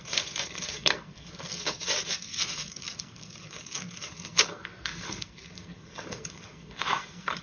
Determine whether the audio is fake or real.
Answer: fake